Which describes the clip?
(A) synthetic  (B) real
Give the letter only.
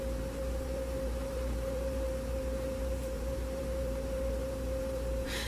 A